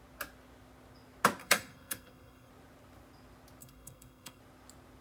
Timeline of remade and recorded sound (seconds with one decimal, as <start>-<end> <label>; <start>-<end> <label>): 0.0-1.4 recorded; 1.4-2.5 remade; 2.5-3.6 recorded; 3.6-4.4 remade; 4.4-5.0 recorded